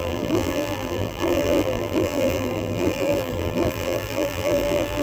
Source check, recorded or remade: remade